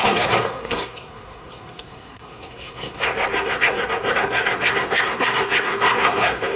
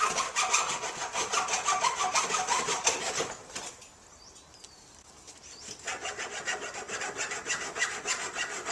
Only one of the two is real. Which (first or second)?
second